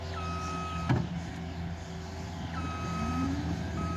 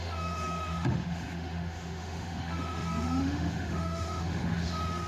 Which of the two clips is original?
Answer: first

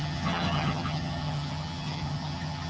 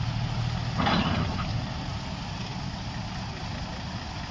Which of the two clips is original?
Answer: second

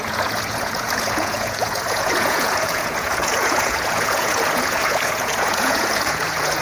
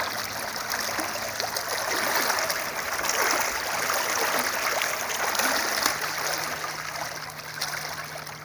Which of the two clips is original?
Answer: second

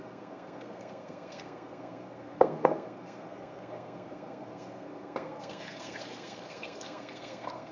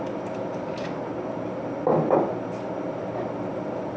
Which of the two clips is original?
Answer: second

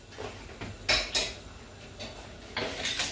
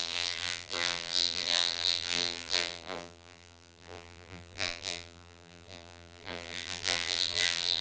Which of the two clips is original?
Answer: first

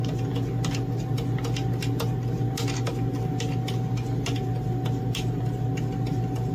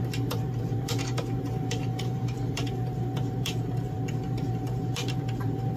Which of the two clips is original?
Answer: first